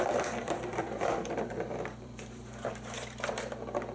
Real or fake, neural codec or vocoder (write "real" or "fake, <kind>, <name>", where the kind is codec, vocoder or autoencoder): fake, vocoder, BigVGAN v2